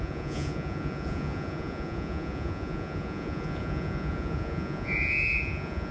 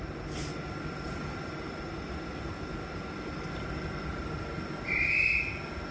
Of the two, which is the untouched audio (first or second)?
second